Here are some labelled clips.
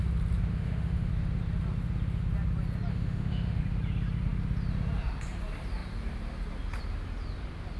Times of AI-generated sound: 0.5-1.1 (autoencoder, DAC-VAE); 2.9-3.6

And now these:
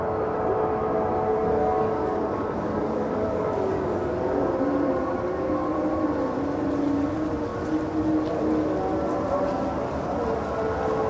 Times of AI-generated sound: 1.4-4.1 (codec, DAC)

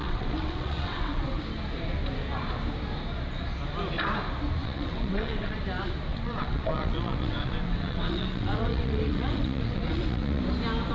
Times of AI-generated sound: 0.0-1.4 (vocoder, WaveNeXt); 4.6-5.6; 6.1-10.4

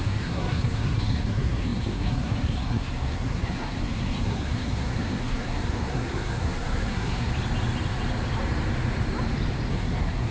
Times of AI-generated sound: 0.0-7.3 (codec, SNAC); 9.7-10.3

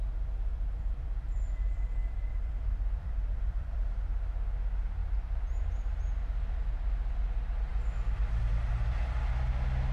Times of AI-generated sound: 0.5-1.5 (vocoder, BigVGAN v2); 2.0-3.9; 5.0-5.6

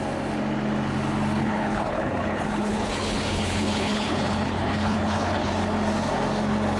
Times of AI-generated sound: 1.4-5.5 (codec, HILCodec)